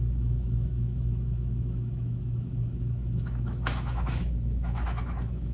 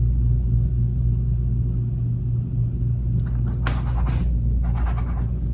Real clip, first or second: second